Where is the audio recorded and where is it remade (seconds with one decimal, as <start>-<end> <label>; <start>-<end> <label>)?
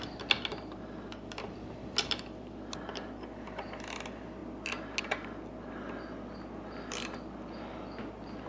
0.0-8.5 recorded